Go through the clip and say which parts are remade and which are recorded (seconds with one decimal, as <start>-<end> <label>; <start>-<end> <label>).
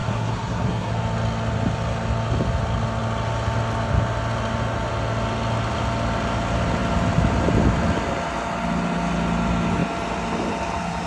0.0-0.9 remade; 0.9-11.1 recorded